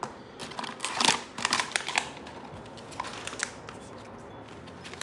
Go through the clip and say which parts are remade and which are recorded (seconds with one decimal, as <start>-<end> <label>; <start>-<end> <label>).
0.0-5.0 recorded